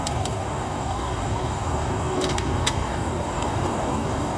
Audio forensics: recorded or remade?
remade